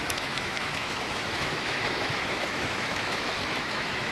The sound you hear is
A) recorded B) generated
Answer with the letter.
B